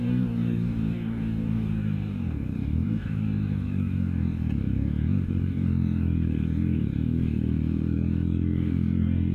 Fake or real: fake